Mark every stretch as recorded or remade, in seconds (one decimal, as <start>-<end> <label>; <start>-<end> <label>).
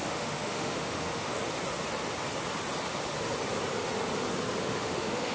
0.0-1.4 remade; 1.4-4.6 recorded; 4.6-5.3 remade